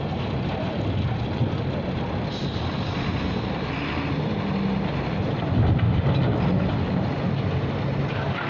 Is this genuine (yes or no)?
yes